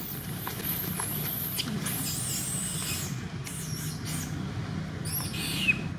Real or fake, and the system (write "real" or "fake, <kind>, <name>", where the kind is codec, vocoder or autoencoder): real